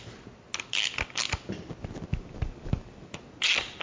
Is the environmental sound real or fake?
real